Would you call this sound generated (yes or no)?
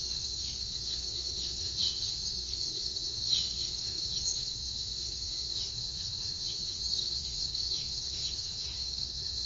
yes